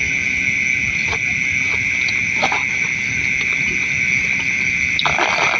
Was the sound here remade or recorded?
recorded